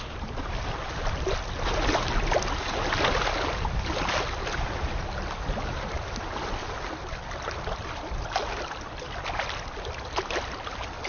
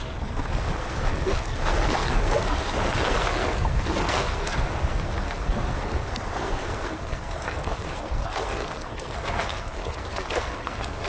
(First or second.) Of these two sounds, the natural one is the first